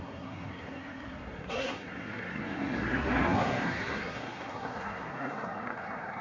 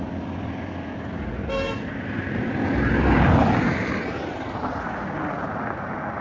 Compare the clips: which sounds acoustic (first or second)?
second